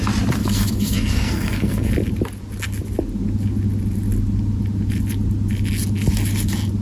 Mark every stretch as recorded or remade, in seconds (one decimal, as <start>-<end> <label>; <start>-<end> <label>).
0.0-0.4 recorded; 0.4-1.9 remade; 1.9-6.8 recorded